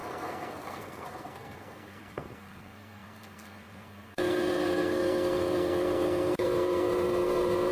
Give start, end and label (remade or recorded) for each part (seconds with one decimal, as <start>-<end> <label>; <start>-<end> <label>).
0.0-7.7 remade

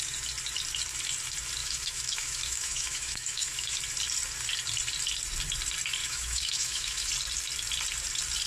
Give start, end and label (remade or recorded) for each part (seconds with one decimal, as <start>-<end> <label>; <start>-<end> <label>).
0.0-1.6 recorded; 1.6-3.8 remade; 3.8-6.0 recorded; 6.0-7.1 remade; 7.1-8.5 recorded

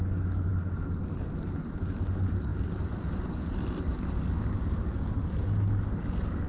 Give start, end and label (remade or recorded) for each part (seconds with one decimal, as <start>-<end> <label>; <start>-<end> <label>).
0.0-6.5 recorded

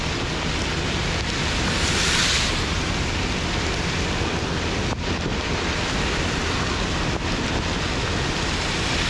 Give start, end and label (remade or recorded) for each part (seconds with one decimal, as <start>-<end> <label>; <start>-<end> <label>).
0.0-9.1 recorded

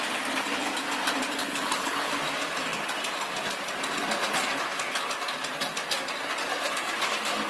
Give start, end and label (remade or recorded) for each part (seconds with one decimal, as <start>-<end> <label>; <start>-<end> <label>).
0.0-1.4 recorded; 1.4-2.1 remade; 2.1-7.5 recorded

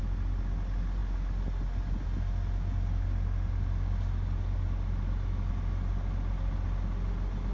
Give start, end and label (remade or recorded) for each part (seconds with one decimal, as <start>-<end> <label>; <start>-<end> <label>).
0.0-7.5 recorded

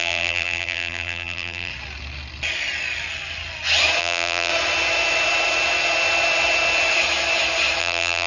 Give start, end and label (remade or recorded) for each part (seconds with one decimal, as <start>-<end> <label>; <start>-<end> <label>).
0.0-1.7 remade; 1.7-4.0 recorded; 4.0-4.5 remade; 4.5-7.8 recorded; 7.8-8.3 remade

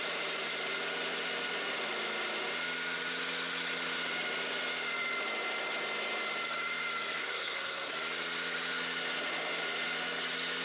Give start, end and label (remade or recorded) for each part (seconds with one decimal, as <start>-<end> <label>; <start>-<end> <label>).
0.0-7.2 recorded; 7.2-7.9 remade; 7.9-10.6 recorded